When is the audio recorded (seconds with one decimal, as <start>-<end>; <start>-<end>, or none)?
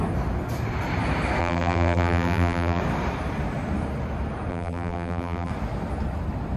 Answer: 0.0-1.4; 2.8-4.5; 5.5-6.6